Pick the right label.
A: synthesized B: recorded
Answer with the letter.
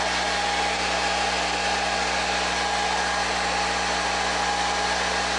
B